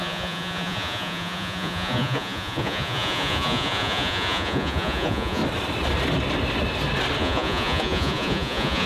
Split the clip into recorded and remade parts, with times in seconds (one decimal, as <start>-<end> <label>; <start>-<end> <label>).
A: 0.0-5.4 remade; 5.4-7.2 recorded; 7.2-8.9 remade